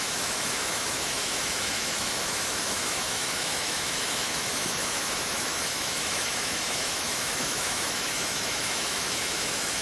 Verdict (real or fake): fake